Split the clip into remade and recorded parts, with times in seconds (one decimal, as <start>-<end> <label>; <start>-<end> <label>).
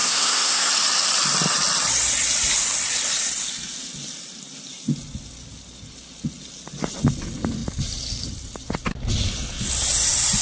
0.0-0.7 remade; 0.7-10.4 recorded